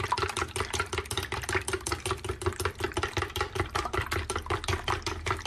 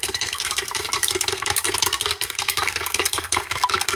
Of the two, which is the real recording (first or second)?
first